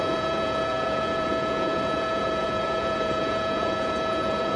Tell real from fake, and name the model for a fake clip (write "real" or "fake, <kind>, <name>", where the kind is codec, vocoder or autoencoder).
fake, vocoder, Vocos